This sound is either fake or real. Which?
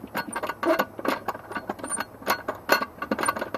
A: real